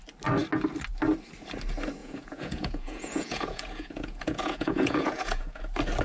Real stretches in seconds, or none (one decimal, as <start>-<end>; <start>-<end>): 0.0-2.0; 5.6-6.0